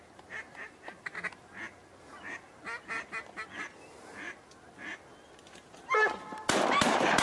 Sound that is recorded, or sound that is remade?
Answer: recorded